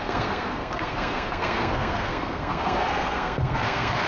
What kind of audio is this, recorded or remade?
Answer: remade